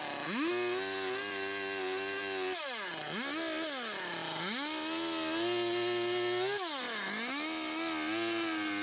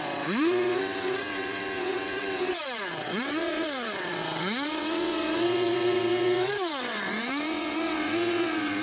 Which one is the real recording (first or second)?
first